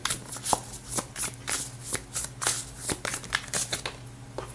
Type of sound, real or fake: real